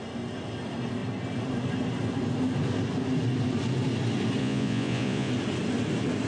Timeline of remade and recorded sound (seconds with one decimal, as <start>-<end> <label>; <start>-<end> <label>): 0.0-4.4 recorded; 4.4-5.3 remade; 5.3-6.3 recorded